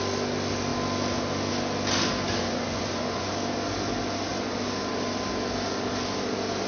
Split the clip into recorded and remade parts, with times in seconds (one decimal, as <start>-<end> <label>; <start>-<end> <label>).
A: 0.0-2.4 recorded; 2.4-3.3 remade; 3.3-6.7 recorded